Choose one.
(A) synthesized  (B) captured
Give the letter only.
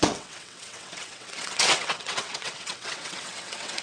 A